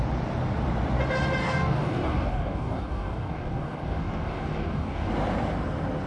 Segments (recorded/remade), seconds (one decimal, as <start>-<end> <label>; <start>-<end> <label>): 0.0-1.4 recorded; 1.4-5.1 remade; 5.1-6.1 recorded